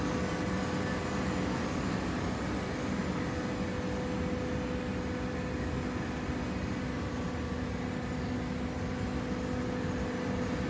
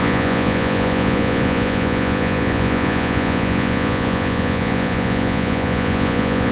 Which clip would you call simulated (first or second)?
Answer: second